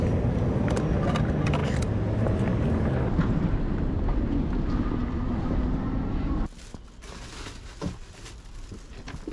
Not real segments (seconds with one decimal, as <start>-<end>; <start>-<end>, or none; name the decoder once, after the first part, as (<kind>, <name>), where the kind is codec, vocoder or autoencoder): none